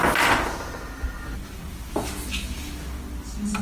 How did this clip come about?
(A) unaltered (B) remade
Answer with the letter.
A